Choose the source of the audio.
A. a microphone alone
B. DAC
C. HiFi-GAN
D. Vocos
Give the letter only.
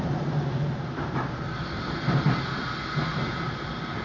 A